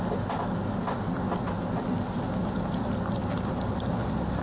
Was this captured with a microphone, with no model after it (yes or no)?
yes